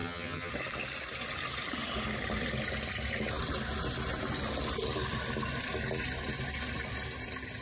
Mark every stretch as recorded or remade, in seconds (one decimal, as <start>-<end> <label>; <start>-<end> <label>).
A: 0.0-0.5 remade; 0.5-7.6 recorded